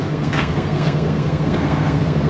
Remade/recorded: remade